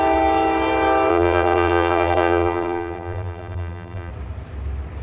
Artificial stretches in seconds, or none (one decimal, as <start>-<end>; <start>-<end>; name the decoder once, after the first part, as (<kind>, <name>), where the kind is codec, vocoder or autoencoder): 1.1-4.1 (vocoder, BigVGAN v2)